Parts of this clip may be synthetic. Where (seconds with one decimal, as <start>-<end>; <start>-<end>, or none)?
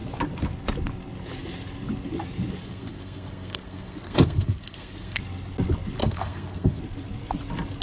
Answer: 2.6-5.2; 6.0-6.8